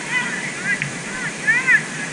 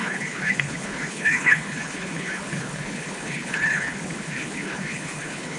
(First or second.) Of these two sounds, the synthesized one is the second